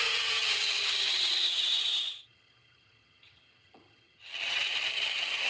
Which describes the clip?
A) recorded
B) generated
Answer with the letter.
B